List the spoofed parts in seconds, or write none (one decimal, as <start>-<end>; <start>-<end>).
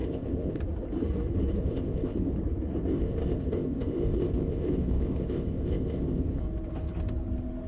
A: 0.0-0.6; 1.6-2.3; 2.9-6.4